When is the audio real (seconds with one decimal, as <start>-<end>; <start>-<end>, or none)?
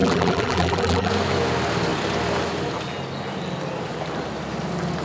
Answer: 1.1-5.0